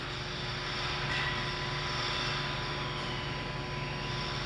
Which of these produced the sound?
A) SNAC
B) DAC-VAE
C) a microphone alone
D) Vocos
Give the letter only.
C